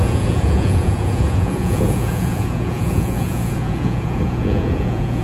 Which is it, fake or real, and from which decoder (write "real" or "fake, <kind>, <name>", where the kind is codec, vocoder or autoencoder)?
fake, vocoder, Vocos